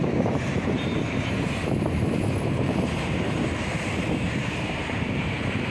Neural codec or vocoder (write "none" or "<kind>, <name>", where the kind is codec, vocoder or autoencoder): vocoder, BigVGAN v2